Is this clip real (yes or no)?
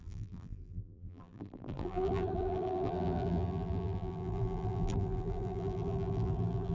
no